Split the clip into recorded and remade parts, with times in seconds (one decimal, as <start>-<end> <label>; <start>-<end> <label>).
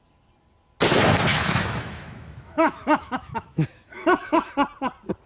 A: 0.0-1.3 recorded; 1.3-4.5 remade; 4.5-5.3 recorded